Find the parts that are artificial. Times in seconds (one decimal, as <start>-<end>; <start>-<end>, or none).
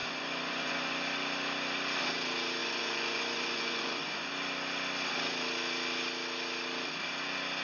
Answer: 0.0-1.0; 2.6-4.3